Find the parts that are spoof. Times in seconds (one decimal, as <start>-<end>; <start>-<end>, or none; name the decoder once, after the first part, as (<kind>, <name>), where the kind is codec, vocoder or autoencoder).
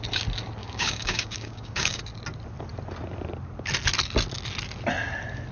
0.6-2.0 (codec, DAC)